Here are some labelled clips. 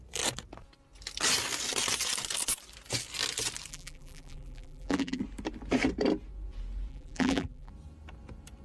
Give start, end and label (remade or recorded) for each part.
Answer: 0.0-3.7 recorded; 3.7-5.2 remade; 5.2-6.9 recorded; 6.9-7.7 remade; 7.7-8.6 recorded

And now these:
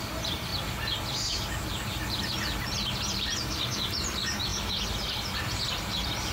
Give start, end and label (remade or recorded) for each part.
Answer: 0.0-0.5 remade; 0.5-1.3 recorded; 1.3-4.5 remade; 4.5-5.5 recorded; 5.5-6.3 remade

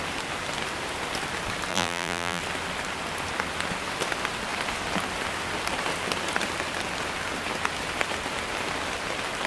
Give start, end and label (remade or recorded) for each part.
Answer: 0.0-1.7 recorded; 1.7-2.4 remade; 2.4-9.5 recorded

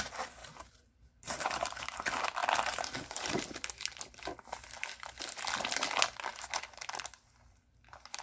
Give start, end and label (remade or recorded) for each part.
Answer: 0.0-0.4 recorded; 0.4-1.8 remade; 1.8-8.2 recorded